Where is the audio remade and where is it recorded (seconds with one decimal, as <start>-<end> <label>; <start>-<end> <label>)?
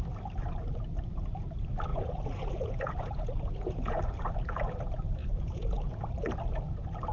0.0-1.9 recorded; 1.9-4.0 remade; 4.0-5.2 recorded; 5.2-6.1 remade; 6.1-7.1 recorded